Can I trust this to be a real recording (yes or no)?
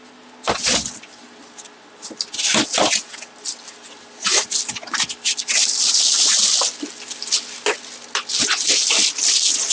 yes